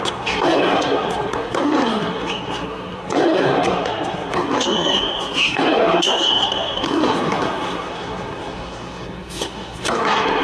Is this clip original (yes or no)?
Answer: no